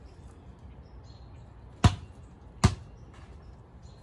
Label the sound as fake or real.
real